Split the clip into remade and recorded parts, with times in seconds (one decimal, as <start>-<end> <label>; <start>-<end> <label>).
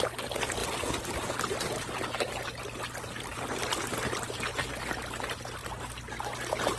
0.0-6.8 recorded